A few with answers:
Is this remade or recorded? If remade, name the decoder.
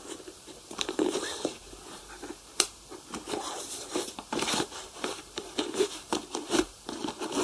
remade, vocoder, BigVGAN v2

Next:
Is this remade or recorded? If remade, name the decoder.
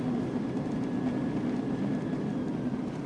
recorded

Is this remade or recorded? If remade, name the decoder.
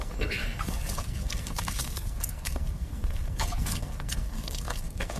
remade, codec, SNAC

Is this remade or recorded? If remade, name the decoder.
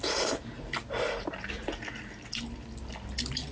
recorded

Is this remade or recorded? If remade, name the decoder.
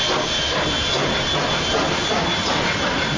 recorded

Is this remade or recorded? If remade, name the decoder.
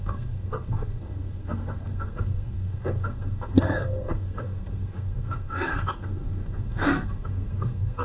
remade, codec, SNAC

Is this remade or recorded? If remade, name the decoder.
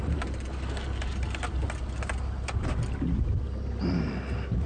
recorded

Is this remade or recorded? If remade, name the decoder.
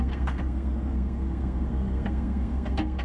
remade, codec, SNAC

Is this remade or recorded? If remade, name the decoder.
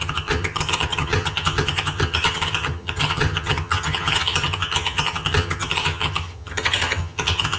remade, vocoder, HiFi-GAN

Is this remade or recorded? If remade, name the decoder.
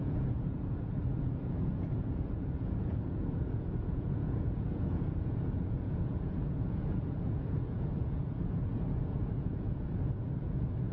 remade, vocoder, Vocos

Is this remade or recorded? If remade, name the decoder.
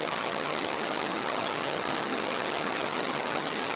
remade, vocoder, HiFi-GAN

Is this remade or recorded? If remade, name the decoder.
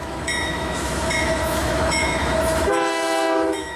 remade, autoencoder, DAC-VAE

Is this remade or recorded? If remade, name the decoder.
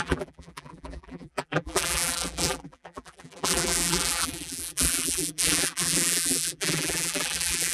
remade, vocoder, BigVGAN v2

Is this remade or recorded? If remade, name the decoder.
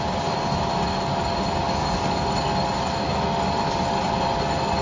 recorded